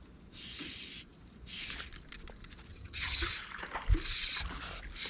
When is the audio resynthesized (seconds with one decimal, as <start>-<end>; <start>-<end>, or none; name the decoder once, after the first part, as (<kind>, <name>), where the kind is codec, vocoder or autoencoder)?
2.7-3.3 (vocoder, HiFi-GAN)

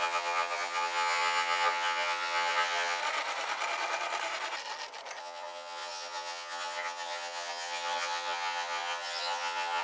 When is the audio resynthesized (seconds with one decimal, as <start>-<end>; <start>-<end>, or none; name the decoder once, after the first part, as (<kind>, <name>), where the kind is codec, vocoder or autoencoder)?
0.0-3.0 (vocoder, HiFi-GAN); 5.2-9.8

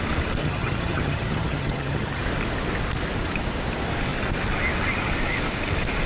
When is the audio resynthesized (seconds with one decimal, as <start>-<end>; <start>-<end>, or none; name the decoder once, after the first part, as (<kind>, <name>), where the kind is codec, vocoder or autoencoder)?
0.4-2.2 (vocoder, HiFi-GAN)

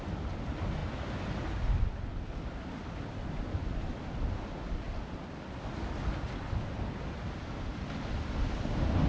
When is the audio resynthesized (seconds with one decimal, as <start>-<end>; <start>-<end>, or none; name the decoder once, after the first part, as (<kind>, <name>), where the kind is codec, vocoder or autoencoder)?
none

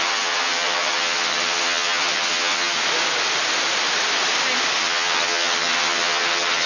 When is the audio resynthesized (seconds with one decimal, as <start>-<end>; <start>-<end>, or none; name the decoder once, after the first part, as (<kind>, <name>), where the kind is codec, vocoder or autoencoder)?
0.0-2.8 (vocoder, HiFi-GAN); 4.8-6.7

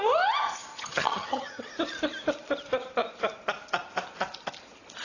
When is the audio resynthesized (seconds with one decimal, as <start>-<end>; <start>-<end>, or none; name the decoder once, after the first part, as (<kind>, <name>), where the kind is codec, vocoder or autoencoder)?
0.7-1.7 (vocoder, HiFi-GAN)